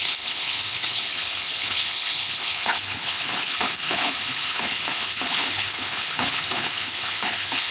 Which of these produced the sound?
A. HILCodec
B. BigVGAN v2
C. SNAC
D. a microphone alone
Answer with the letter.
A